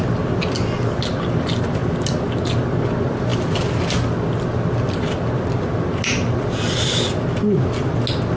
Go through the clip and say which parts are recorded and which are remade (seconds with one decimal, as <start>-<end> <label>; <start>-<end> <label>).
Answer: 0.0-8.4 recorded